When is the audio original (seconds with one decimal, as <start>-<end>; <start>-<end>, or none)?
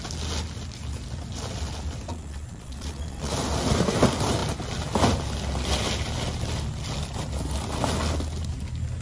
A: 0.0-2.1; 3.3-9.0